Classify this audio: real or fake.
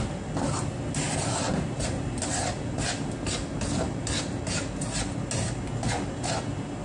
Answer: real